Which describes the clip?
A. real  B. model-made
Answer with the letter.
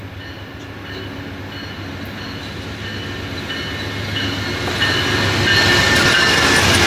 A